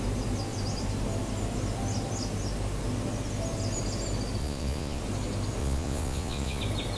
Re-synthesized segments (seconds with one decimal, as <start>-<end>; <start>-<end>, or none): 4.4-5.0; 5.6-6.6